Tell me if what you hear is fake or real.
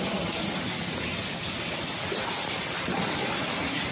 real